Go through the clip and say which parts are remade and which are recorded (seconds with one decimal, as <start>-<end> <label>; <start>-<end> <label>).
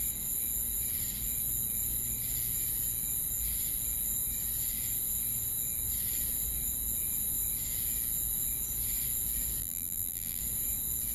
0.0-9.6 recorded; 9.6-10.4 remade; 10.4-11.1 recorded